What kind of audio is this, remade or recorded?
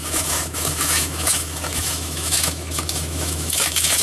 remade